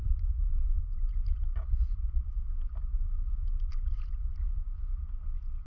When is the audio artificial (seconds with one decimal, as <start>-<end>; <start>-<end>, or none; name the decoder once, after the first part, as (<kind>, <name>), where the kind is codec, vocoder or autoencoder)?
0.0-0.8 (vocoder, BigVGAN v2)